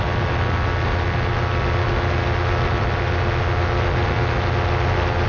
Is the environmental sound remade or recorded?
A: recorded